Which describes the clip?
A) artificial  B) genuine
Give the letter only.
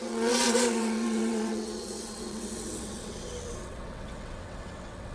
A